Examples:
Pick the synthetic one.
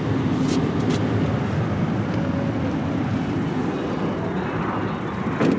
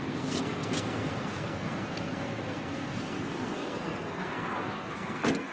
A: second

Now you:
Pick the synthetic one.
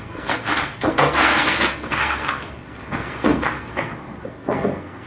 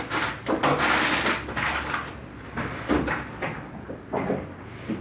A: first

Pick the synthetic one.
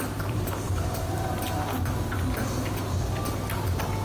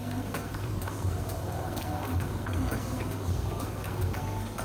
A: second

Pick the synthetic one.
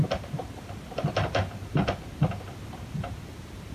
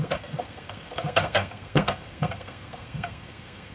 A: second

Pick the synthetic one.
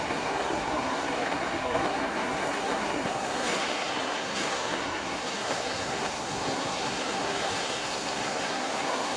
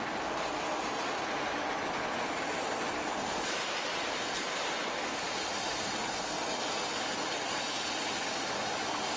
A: first